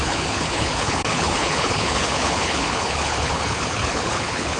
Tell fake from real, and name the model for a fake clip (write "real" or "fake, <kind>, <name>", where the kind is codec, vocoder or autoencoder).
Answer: fake, codec, HILCodec